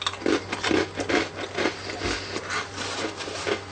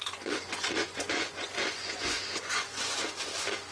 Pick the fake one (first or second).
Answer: second